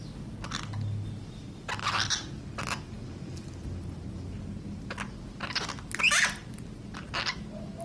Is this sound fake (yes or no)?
no